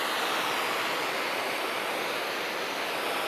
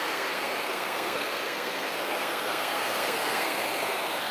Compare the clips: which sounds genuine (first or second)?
first